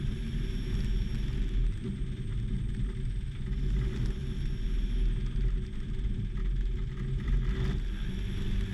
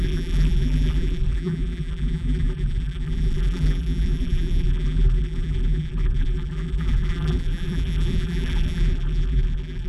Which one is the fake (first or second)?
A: second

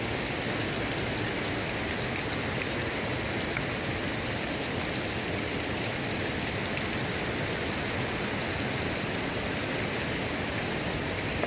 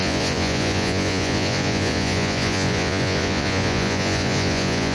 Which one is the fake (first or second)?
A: second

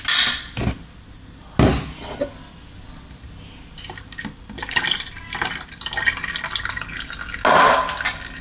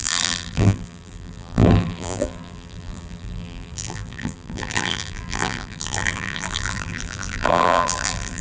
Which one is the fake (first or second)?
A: second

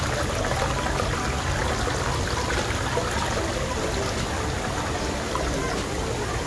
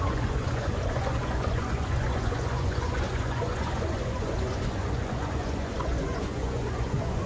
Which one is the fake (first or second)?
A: second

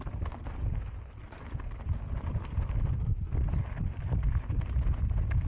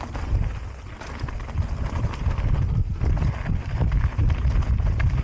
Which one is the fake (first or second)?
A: first